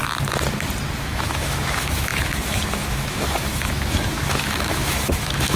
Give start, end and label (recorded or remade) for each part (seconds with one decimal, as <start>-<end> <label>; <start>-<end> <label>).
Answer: 0.0-1.0 recorded; 1.0-5.6 remade